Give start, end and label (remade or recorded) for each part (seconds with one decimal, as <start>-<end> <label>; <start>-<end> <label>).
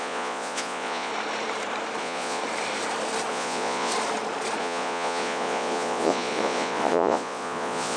0.0-1.1 remade; 1.1-2.0 recorded; 2.0-2.4 remade; 2.4-3.3 recorded; 3.3-3.9 remade; 3.9-4.6 recorded; 4.6-8.0 remade